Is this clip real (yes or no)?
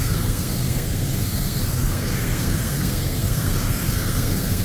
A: no